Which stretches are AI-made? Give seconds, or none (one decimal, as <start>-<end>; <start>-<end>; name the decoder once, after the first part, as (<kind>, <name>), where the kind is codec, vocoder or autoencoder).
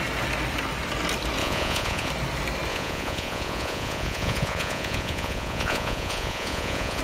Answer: 1.4-2.1 (vocoder, Vocos); 2.7-7.0